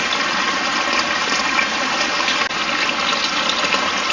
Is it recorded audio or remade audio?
recorded